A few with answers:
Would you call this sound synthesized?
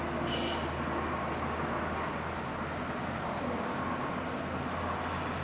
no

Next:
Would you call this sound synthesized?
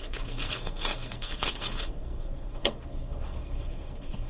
yes